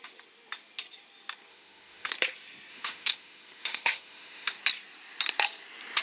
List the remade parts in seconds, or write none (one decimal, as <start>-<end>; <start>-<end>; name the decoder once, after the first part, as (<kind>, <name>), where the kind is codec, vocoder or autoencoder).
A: 1.5-2.1 (autoencoder, DAC-VAE); 2.7-4.5